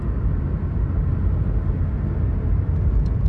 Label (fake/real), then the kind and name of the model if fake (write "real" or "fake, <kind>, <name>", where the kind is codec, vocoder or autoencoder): real